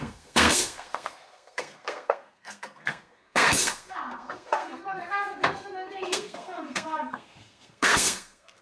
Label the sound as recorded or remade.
remade